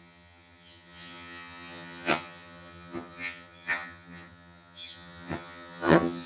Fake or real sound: fake